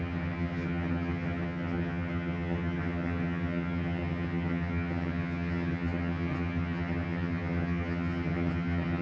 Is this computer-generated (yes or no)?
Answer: yes